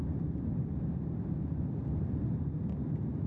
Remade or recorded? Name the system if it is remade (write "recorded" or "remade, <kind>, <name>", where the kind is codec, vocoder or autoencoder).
recorded